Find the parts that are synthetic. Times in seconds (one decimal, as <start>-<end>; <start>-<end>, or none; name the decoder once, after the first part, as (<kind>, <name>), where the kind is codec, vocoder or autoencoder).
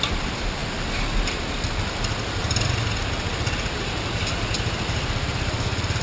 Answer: none